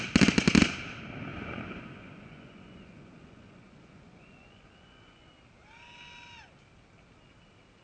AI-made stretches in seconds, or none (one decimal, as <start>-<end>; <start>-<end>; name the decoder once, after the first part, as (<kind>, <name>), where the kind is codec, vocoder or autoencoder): 1.3-5.3 (vocoder, Vocos)